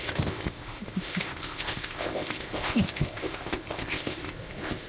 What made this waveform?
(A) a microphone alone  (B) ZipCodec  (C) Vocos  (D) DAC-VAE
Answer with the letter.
B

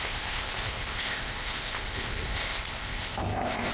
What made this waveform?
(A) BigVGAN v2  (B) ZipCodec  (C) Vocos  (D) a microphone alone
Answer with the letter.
B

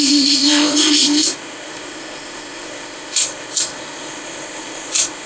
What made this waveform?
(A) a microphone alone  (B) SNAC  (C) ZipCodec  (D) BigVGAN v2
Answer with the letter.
C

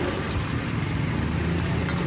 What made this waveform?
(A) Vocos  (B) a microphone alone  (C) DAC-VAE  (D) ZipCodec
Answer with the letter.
B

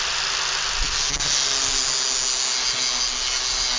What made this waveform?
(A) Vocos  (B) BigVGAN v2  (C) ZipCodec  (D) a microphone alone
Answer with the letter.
D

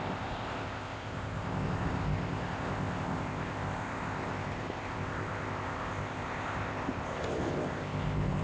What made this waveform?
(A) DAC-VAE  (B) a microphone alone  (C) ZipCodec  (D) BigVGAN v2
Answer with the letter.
C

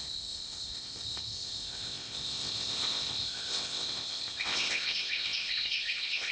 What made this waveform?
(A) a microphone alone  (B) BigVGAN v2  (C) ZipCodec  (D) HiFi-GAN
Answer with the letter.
C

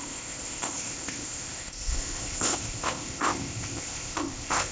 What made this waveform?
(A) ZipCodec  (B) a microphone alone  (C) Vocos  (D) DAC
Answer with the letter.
A